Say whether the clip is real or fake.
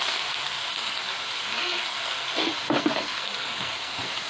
fake